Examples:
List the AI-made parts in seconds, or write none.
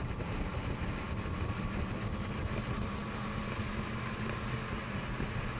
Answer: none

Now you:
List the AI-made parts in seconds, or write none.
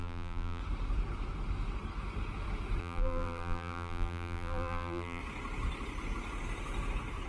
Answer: 0.0-0.6 (vocoder, BigVGAN v2); 2.8-5.2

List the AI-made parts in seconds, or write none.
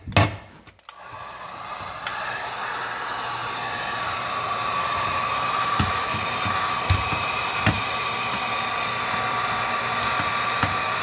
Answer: 3.4-8.7 (vocoder, BigVGAN v2)